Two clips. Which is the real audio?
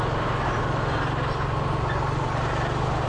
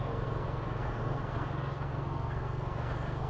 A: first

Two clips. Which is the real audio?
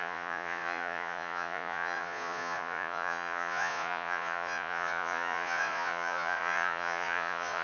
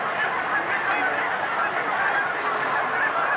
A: second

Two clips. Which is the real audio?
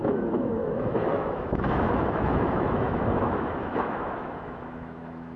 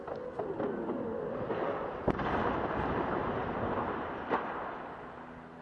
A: second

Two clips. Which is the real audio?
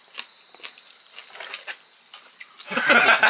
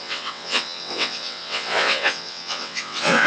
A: first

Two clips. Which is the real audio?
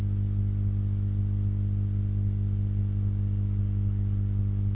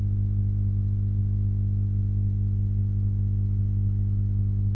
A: first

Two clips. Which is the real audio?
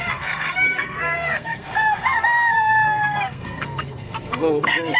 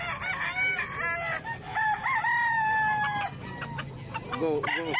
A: second